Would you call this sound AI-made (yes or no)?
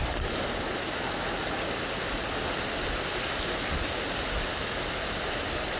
no